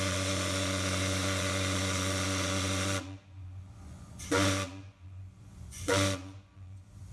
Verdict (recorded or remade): remade